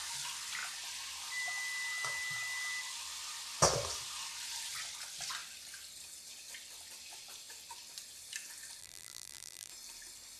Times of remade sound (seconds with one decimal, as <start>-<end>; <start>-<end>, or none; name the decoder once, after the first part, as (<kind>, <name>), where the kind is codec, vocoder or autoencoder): 8.8-9.7 (vocoder, BigVGAN v2)